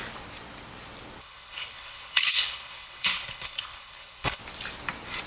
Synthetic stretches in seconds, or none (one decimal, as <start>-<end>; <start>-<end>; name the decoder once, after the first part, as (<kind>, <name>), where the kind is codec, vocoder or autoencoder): 1.2-4.4 (codec, HILCodec)